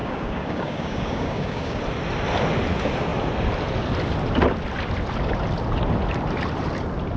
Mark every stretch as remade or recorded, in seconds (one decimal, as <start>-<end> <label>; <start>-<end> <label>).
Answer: 0.0-1.8 remade; 1.8-7.2 recorded